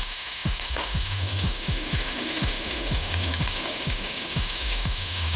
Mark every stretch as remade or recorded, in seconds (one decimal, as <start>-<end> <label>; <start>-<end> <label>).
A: 0.0-5.4 remade